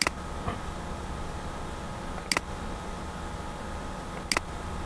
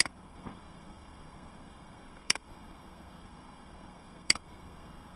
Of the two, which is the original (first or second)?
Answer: first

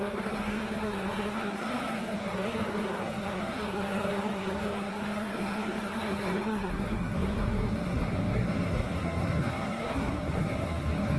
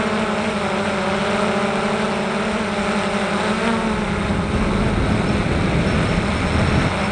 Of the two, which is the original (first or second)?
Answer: second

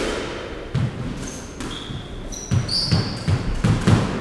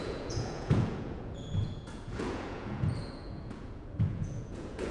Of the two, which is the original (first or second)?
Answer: first